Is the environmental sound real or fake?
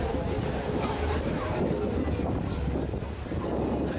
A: real